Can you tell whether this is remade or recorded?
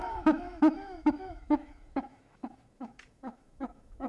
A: remade